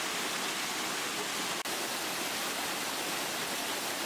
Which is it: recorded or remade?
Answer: recorded